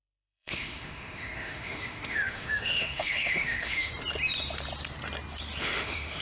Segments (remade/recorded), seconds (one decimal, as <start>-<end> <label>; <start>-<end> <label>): 0.0-3.9 remade; 3.9-5.6 recorded; 5.6-6.2 remade